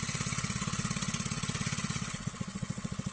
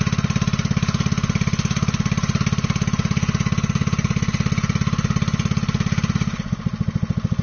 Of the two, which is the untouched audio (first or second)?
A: second